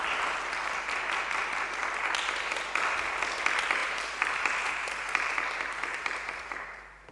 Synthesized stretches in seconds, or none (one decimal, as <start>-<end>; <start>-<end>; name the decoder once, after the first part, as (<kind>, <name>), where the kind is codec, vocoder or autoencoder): 3.8-7.1 (vocoder, BigVGAN v2)